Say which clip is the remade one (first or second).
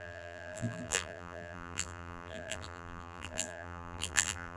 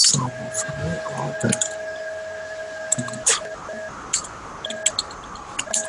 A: first